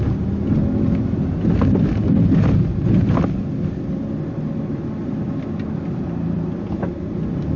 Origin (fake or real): real